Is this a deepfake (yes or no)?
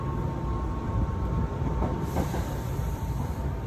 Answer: yes